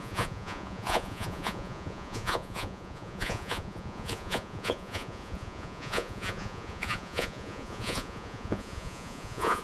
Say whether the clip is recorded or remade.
remade